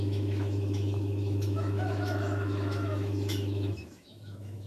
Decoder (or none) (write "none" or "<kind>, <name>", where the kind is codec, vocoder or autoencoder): autoencoder, DAC-VAE